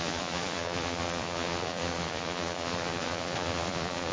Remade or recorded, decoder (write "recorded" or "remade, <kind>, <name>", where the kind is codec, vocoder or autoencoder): remade, vocoder, Vocos